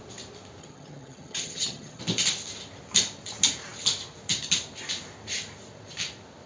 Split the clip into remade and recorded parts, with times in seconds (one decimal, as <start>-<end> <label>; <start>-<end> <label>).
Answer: 0.0-0.6 recorded; 0.6-2.0 remade; 2.0-6.5 recorded